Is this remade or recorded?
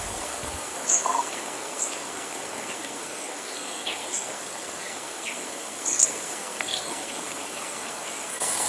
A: remade